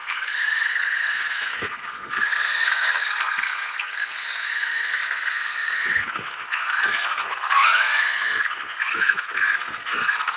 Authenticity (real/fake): fake